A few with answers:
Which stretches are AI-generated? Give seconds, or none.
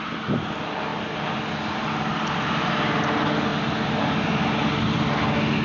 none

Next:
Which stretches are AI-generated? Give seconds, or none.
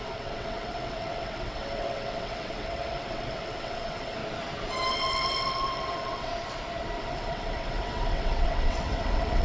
0.0-4.2; 4.9-6.3; 7.0-9.4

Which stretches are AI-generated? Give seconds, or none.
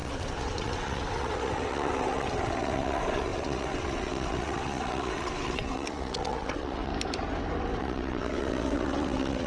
0.0-6.9; 7.8-9.5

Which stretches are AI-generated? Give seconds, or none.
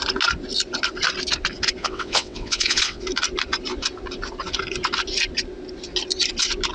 1.8-3.0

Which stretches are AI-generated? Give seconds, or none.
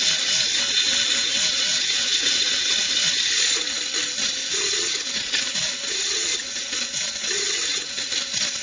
1.7-2.9; 4.4-8.1